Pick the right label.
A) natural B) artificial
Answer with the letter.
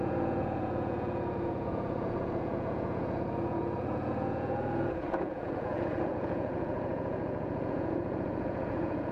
B